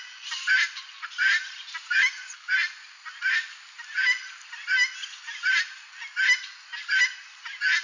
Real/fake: real